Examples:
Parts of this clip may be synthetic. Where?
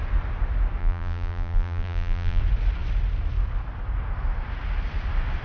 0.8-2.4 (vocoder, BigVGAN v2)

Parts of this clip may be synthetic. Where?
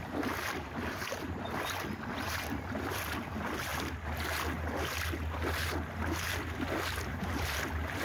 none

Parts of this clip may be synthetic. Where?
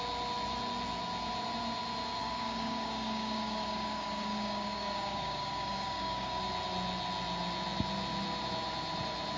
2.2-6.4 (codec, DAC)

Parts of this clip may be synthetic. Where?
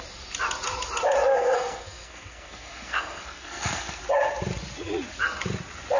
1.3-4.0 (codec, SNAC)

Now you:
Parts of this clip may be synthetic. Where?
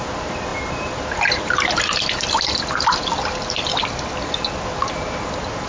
none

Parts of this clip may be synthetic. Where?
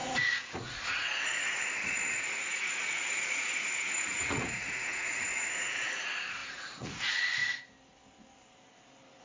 0.0-7.4 (vocoder, Vocos)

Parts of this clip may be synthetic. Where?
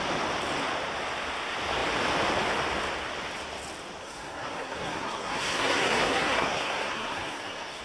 4.0-7.8 (codec, SNAC)